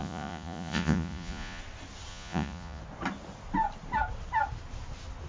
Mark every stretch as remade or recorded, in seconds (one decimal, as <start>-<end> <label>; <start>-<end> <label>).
0.0-1.6 remade; 1.6-2.1 recorded; 2.1-2.8 remade; 2.8-5.3 recorded